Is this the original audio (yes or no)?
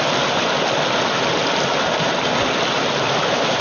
yes